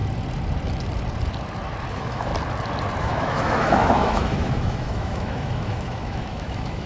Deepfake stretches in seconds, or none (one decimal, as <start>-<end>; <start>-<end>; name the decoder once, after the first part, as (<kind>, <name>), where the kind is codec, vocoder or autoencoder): 1.9-2.3 (autoencoder, DAC-VAE); 3.0-6.9